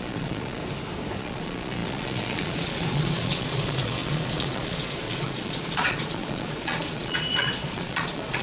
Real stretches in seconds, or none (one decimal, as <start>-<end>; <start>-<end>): 0.6-1.2